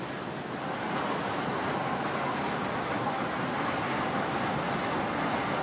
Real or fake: real